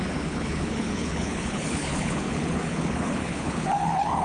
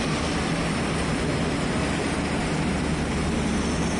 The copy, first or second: first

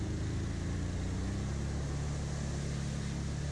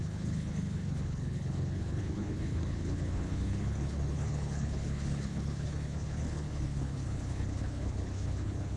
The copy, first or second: second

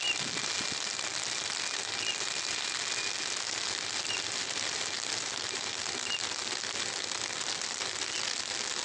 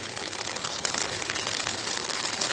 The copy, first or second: second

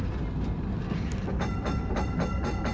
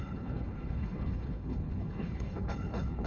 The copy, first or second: second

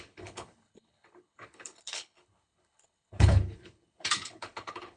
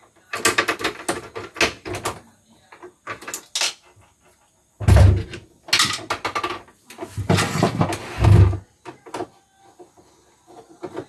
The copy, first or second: first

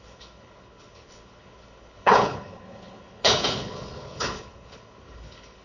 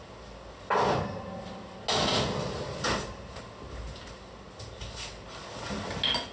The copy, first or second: first